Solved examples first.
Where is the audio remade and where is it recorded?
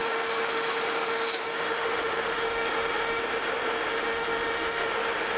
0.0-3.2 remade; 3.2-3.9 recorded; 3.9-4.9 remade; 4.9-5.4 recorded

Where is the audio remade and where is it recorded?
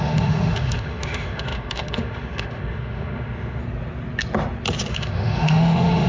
0.0-3.6 remade; 3.6-4.9 recorded; 4.9-6.1 remade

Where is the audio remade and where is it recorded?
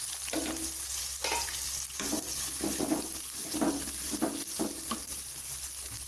0.0-6.1 recorded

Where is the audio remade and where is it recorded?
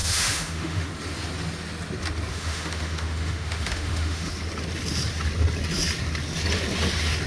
0.0-0.9 remade; 0.9-2.3 recorded; 2.3-4.3 remade; 4.3-7.3 recorded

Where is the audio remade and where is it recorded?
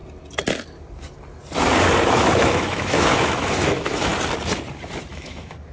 0.0-2.1 recorded; 2.1-4.1 remade; 4.1-5.1 recorded; 5.1-5.7 remade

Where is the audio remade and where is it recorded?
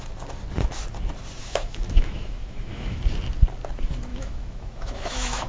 0.0-1.4 recorded; 1.4-3.0 remade; 3.0-4.1 recorded; 4.1-5.5 remade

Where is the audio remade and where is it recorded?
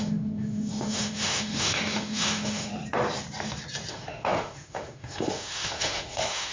0.0-2.7 remade; 2.7-3.9 recorded; 3.9-6.5 remade